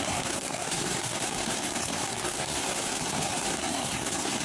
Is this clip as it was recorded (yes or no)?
no